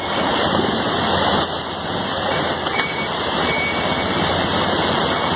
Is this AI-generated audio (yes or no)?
yes